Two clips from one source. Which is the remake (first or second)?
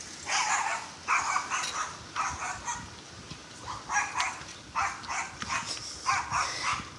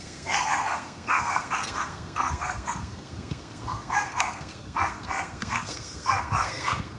second